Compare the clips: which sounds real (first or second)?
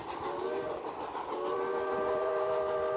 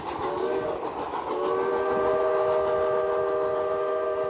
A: second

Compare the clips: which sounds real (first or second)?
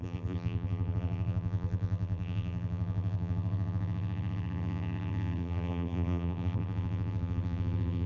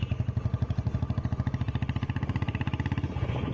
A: second